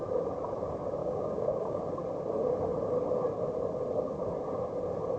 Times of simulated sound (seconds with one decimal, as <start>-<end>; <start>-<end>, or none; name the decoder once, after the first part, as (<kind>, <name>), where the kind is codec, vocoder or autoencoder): 1.0-1.8 (codec, DAC)